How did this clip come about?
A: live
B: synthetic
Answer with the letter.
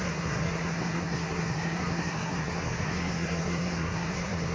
B